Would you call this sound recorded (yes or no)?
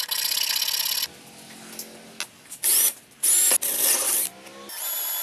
yes